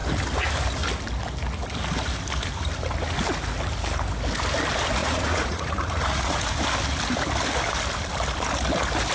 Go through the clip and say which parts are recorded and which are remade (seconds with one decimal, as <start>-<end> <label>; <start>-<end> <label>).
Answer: 0.0-5.0 recorded; 5.0-6.5 remade; 6.5-9.1 recorded